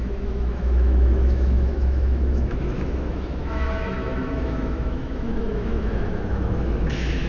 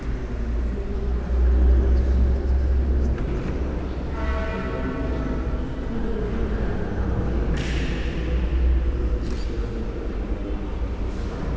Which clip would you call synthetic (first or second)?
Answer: first